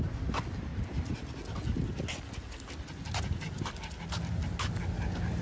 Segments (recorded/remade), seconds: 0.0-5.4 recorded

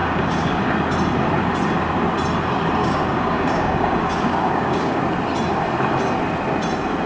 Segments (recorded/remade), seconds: 0.0-0.6 remade; 0.6-2.8 recorded; 2.8-5.0 remade; 5.0-7.1 recorded

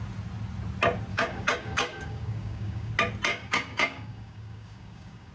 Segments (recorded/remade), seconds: 0.0-1.1 recorded; 1.1-2.9 remade; 2.9-3.3 recorded; 3.3-5.3 remade

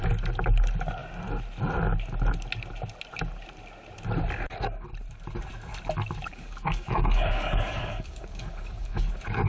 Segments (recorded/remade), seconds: 0.0-6.3 recorded; 6.3-9.1 remade; 9.1-9.5 recorded